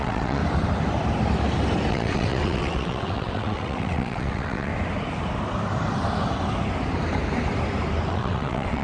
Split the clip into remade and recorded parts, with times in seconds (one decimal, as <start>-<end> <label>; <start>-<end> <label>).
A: 0.0-0.4 remade; 0.4-1.9 recorded; 1.9-4.7 remade; 4.7-8.1 recorded; 8.1-8.8 remade